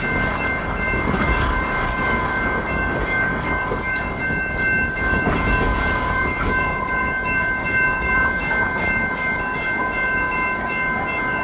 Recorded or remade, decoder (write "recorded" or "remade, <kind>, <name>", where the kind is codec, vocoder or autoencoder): remade, codec, DAC